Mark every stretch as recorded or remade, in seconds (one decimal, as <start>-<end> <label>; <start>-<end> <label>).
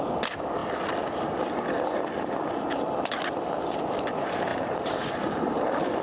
0.0-4.5 recorded; 4.5-5.6 remade; 5.6-6.0 recorded